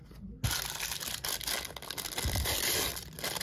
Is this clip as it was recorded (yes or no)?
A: yes